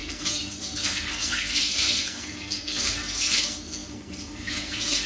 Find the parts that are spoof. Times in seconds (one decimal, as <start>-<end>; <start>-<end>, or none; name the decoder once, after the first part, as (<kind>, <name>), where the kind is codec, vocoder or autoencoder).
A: 0.0-5.1 (codec, SNAC)

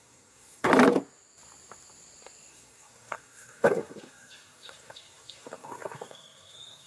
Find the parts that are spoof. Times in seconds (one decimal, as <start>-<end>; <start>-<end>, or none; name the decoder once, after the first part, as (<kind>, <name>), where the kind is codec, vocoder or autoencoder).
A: 0.0-0.7 (codec, SNAC); 2.5-6.9

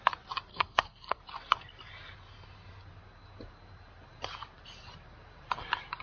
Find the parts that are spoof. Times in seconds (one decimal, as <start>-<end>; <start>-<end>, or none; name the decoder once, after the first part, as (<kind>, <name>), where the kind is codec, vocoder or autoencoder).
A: 0.5-1.2 (codec, SNAC)

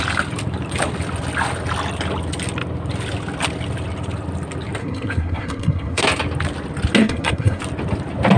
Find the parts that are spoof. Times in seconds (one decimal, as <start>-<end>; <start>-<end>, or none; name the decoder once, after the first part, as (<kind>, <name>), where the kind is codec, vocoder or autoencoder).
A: 4.8-6.0 (codec, SNAC); 7.0-7.6